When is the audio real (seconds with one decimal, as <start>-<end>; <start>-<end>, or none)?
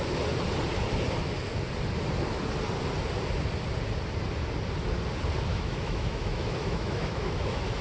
0.0-5.5